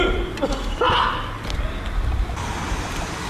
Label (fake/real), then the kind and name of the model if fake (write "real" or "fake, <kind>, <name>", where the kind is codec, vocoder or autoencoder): real